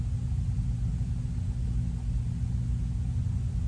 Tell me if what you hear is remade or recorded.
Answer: recorded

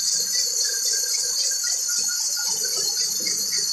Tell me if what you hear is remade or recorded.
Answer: remade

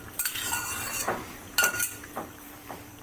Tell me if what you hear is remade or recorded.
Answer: remade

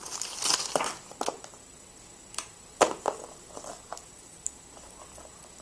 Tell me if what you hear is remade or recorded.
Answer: recorded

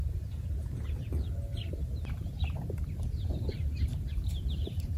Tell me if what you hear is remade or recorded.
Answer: remade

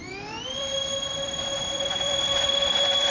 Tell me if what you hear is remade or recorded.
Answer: remade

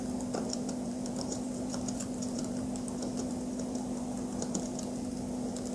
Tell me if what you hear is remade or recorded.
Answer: remade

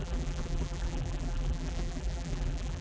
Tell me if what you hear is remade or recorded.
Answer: remade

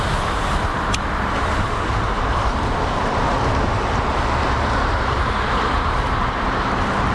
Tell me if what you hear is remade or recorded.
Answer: remade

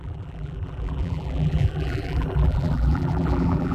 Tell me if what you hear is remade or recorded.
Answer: remade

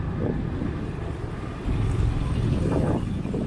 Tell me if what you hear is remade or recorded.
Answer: remade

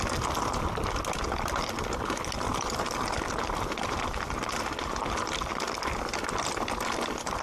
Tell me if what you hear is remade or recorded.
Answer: recorded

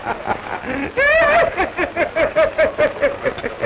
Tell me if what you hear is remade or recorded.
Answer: recorded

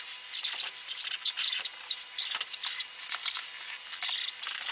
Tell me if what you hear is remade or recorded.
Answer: recorded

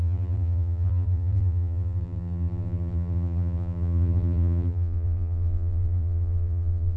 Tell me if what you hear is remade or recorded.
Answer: remade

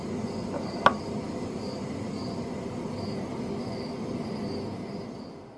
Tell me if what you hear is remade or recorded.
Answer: recorded